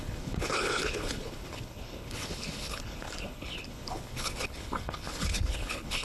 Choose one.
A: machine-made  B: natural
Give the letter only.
A